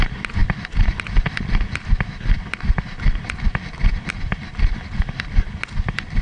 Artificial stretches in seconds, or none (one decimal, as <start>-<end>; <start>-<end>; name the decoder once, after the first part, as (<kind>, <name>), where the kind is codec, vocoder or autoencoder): none